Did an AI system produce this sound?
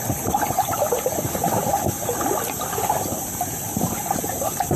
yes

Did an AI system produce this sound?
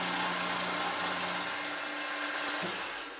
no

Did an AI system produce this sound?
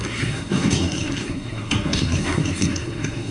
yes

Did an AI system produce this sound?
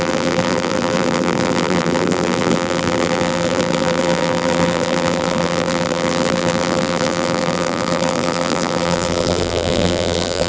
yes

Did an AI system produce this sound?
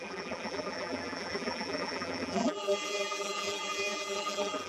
yes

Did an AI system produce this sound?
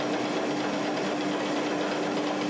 no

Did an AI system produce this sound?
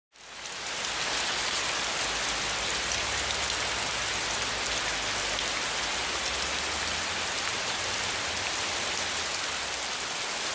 no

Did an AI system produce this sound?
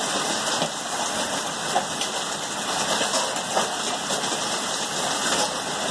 no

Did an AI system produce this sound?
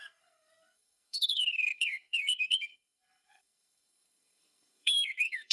yes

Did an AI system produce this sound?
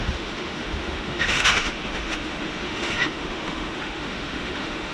yes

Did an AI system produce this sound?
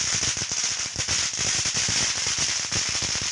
no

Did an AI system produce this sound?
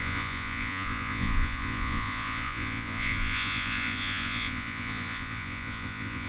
yes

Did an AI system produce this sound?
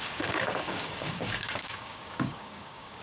yes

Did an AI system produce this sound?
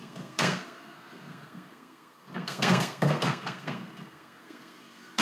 yes